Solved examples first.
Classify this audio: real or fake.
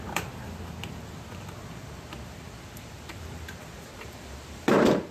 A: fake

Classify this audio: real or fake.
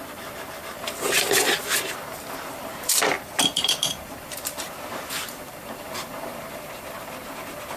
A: fake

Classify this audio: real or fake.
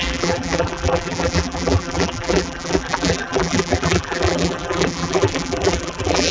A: fake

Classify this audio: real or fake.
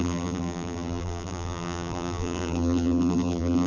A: fake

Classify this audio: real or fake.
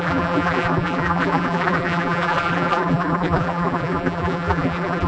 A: fake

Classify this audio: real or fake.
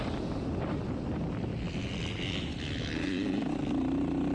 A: real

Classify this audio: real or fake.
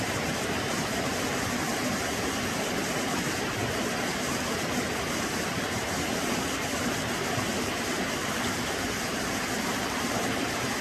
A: fake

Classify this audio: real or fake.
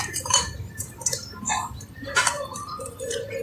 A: fake